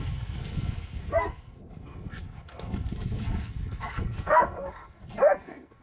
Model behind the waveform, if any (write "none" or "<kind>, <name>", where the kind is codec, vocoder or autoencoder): codec, SNAC